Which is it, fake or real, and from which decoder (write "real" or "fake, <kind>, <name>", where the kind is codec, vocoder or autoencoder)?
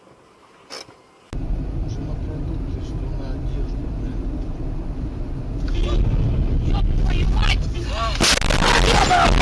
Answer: real